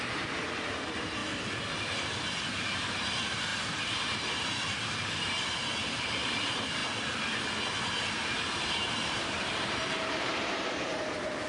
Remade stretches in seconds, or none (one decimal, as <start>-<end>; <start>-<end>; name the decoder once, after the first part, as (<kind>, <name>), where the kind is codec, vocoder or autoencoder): 0.0-1.2 (vocoder, BigVGAN v2); 2.4-6.8; 8.0-11.5